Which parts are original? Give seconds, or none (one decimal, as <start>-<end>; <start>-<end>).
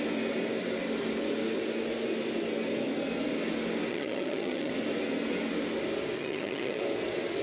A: 0.0-3.9; 4.7-6.2; 6.8-7.4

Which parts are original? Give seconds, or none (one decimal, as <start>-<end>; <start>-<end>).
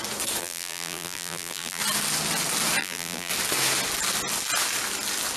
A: 0.0-0.4; 1.8-2.8; 3.3-5.4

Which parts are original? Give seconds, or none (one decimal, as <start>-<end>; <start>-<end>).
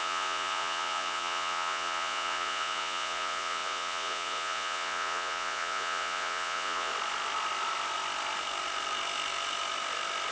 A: 6.9-10.3